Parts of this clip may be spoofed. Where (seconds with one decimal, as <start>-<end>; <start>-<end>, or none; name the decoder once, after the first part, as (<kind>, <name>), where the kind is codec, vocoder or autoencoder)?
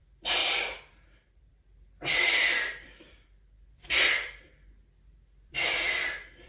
0.0-0.4 (vocoder, BigVGAN v2); 0.9-6.5